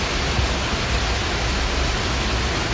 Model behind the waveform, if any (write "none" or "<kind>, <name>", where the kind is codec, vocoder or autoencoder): none